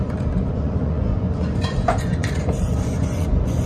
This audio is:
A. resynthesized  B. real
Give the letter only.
A